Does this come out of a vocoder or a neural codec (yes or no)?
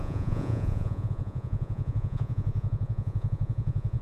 yes